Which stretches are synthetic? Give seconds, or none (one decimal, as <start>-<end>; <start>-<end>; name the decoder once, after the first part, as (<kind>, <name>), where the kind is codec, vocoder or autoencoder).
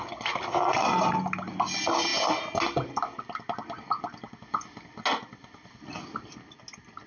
0.7-1.2 (vocoder, WaveNeXt)